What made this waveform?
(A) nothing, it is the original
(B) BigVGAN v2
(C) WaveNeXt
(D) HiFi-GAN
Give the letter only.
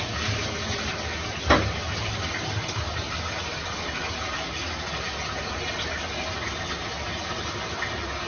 A